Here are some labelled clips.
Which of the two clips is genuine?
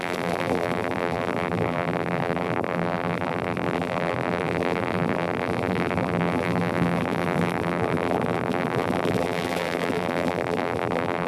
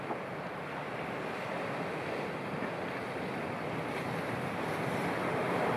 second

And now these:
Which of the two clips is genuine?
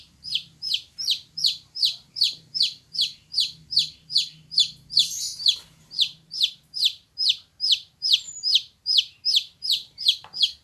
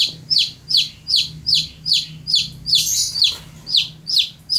second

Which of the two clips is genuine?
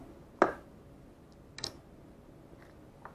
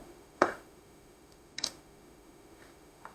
first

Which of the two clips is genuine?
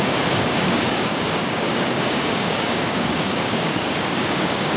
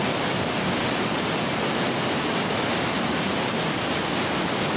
second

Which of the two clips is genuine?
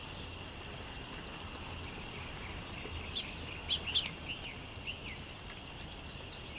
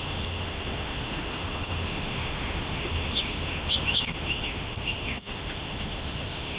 first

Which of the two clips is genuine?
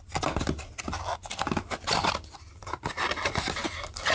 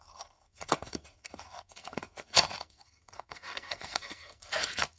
first